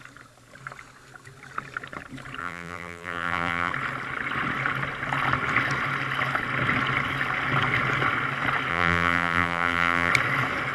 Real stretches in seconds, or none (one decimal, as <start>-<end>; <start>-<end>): 0.0-2.4; 3.7-8.7; 10.1-10.7